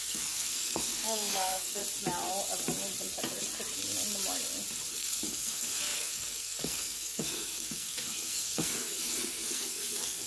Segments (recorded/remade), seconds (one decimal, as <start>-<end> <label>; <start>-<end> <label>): 0.0-1.8 remade; 1.8-4.9 recorded; 4.9-10.3 remade